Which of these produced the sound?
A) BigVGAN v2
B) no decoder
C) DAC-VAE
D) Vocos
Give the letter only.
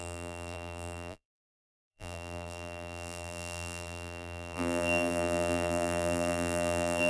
A